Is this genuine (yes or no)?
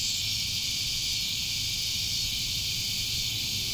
no